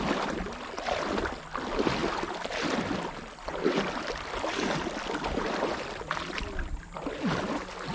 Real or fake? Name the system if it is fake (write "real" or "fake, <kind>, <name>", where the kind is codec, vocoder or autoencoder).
real